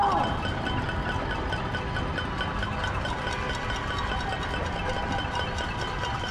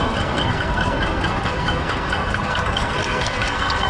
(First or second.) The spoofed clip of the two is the second